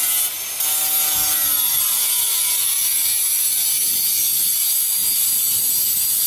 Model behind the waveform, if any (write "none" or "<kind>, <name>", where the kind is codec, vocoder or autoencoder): none